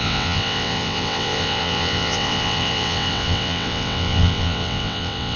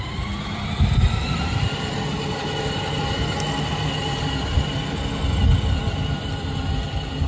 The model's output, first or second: first